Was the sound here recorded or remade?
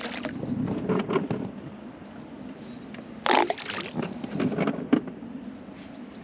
recorded